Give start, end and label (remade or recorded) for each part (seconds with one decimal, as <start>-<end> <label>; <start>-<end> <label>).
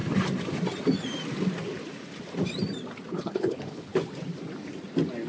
0.0-3.1 recorded; 3.1-3.9 remade; 3.9-5.3 recorded